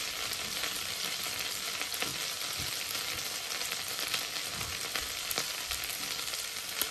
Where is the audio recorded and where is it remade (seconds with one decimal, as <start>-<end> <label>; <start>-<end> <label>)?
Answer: 0.0-6.9 recorded